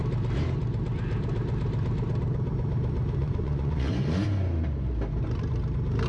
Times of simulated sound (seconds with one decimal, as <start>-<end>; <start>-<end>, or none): 3.2-3.9